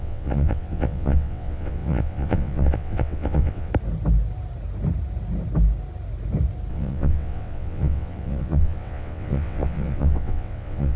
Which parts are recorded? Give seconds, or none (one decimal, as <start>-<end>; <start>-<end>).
3.7-6.7